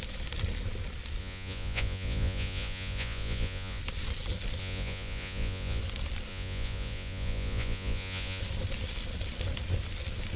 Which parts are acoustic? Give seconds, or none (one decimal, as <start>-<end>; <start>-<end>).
0.0-1.2; 3.8-4.6; 5.8-6.3; 8.4-10.4

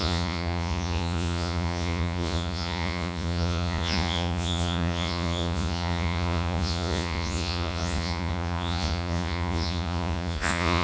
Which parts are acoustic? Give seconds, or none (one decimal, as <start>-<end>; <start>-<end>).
none

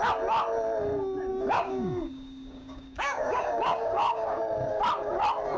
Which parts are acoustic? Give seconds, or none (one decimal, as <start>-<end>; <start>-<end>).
0.0-1.3; 4.7-5.6

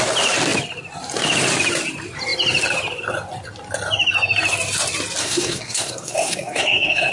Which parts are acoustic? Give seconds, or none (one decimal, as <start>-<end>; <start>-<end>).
0.0-5.2